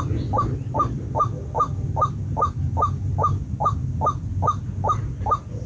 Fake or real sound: real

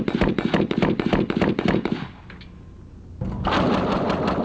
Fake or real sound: real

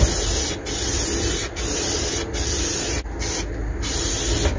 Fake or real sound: real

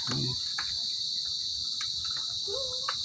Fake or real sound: real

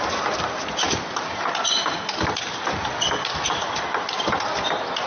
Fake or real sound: real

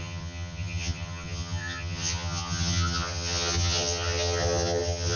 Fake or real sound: fake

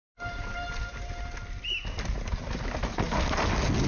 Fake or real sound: real